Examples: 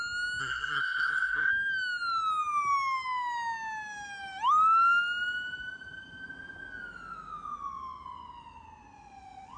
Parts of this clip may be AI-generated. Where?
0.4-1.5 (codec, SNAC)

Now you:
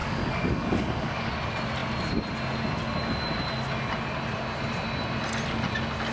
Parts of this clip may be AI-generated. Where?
0.0-1.3 (codec, DAC)

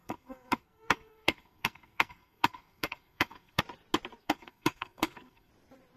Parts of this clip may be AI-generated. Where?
0.0-3.6 (codec, SNAC); 4.2-5.5